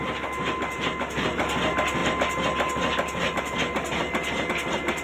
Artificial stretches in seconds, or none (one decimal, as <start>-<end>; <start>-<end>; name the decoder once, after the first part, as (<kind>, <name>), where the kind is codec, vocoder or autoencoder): none